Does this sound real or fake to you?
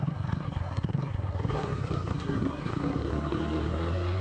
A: fake